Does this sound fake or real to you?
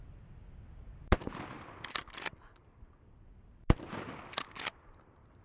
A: real